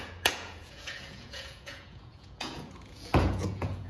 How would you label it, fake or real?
fake